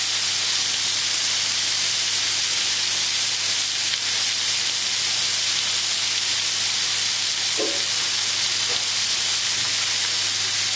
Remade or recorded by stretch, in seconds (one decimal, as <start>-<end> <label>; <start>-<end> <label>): 0.0-10.8 recorded